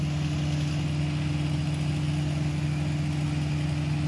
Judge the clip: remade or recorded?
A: recorded